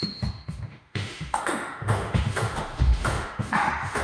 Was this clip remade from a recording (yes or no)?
yes